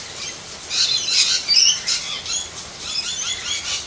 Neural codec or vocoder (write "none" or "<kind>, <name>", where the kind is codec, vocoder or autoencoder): none